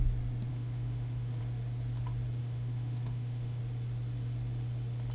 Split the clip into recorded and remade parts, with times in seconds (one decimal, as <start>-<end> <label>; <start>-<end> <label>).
0.0-0.5 recorded; 0.5-1.4 remade; 1.4-2.4 recorded; 2.4-3.6 remade; 3.6-5.1 recorded